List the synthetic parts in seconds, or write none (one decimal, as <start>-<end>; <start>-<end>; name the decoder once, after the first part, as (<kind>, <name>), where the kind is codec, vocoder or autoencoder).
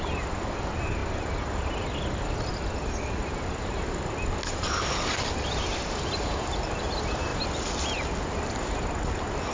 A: none